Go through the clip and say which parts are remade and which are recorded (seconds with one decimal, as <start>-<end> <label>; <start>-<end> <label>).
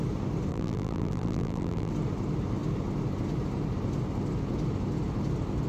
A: 0.0-0.5 recorded; 0.5-1.9 remade; 1.9-5.7 recorded